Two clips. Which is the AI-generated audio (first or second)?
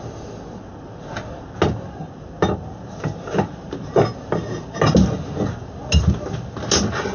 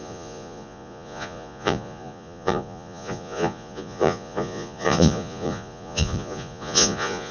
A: second